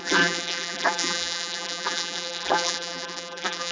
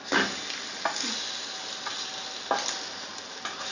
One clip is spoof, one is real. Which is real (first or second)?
second